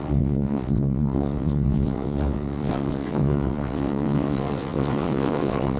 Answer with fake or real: fake